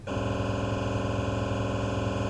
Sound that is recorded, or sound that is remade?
recorded